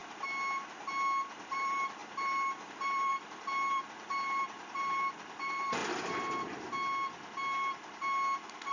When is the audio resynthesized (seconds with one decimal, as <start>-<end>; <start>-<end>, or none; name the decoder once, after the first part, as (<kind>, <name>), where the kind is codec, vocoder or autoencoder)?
1.5-3.1 (vocoder, BigVGAN v2); 3.7-5.8